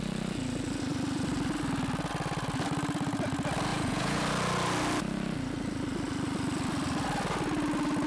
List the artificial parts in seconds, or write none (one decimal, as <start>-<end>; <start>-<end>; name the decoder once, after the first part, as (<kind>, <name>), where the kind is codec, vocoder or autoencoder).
3.7-4.2 (vocoder, Vocos)